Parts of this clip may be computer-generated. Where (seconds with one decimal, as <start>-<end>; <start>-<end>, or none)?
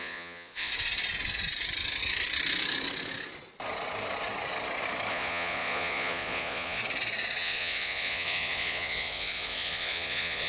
0.0-0.7; 5.1-6.8; 7.4-10.5